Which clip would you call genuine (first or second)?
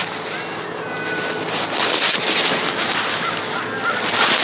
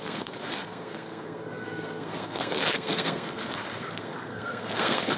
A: first